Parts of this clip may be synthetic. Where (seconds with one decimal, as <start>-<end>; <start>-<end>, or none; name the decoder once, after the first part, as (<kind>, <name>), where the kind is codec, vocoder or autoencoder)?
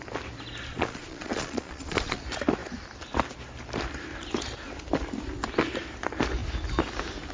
0.7-2.2 (vocoder, Vocos)